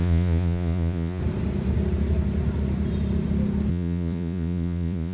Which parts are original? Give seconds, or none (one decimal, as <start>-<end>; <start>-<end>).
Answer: 1.2-3.7